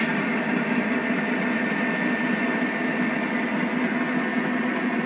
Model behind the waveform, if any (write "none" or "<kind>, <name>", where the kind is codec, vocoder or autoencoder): none